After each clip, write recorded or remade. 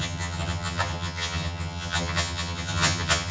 remade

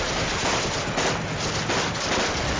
recorded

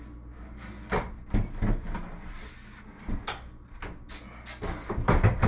recorded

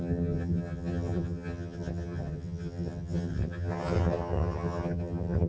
remade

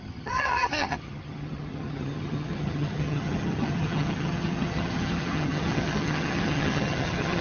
remade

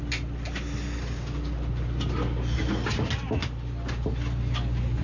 recorded